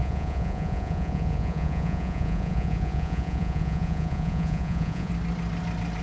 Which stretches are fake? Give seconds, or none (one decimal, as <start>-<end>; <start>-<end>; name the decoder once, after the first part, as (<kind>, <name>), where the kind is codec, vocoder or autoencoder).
0.0-5.1 (vocoder, Vocos)